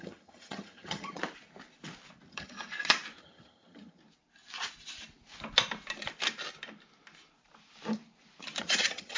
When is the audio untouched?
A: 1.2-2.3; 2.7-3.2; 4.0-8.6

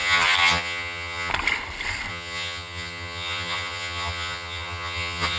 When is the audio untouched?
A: 1.3-2.1

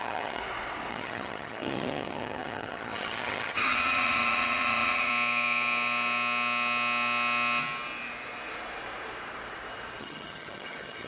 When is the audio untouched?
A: 0.4-0.9; 5.1-10.0

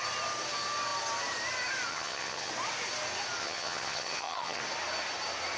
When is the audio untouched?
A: 0.0-1.9; 2.5-3.4; 4.6-5.6

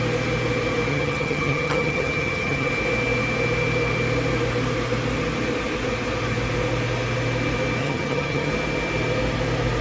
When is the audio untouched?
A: 0.0-0.9; 2.7-7.8; 8.5-9.8

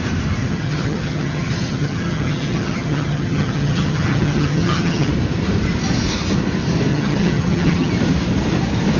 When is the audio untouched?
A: 0.0-0.4; 5.1-6.9; 7.9-9.0